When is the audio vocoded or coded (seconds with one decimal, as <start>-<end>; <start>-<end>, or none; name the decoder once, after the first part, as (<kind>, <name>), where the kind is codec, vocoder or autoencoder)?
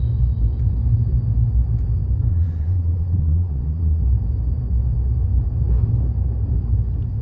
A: 2.3-4.0 (vocoder, Vocos)